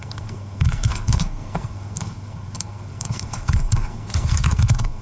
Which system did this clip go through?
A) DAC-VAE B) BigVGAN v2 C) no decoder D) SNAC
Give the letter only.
D